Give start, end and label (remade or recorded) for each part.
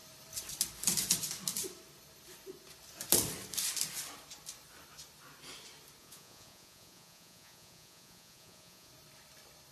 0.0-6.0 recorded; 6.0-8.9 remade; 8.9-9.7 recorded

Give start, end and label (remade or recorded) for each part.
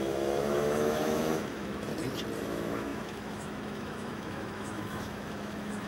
0.0-1.9 remade; 1.9-2.4 recorded; 2.4-5.9 remade